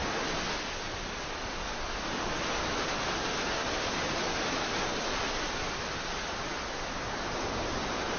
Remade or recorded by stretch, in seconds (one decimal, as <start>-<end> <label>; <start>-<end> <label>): 0.0-8.2 recorded